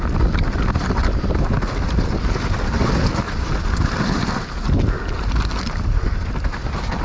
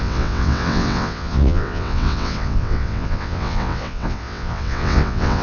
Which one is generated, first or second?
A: second